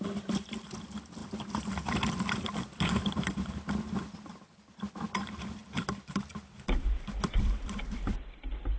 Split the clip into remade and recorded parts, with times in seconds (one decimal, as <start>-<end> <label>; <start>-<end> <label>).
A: 0.0-1.2 recorded; 1.2-2.1 remade; 2.1-5.6 recorded; 5.6-8.8 remade